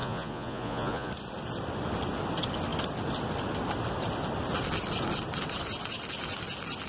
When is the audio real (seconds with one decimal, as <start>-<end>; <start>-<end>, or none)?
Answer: 1.1-6.9